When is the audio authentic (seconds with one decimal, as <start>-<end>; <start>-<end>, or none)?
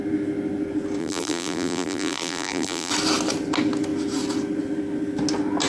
0.0-1.0; 2.9-5.7